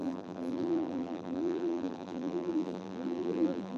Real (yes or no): no